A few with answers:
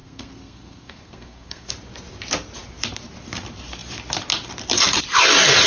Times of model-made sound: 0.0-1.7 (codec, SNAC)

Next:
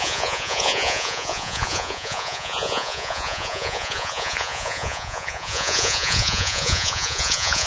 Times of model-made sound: 0.0-7.7 (vocoder, Vocos)

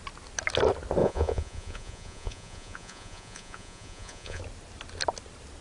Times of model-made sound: 1.0-4.4 (vocoder, Vocos)